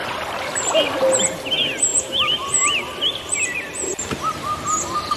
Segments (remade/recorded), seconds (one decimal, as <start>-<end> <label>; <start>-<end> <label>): 0.0-0.7 remade; 0.7-1.9 recorded; 1.9-5.2 remade

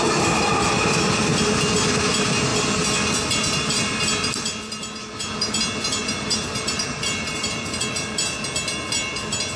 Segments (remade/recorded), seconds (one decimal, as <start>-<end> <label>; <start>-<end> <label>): 0.0-6.0 recorded; 6.0-7.8 remade; 7.8-9.6 recorded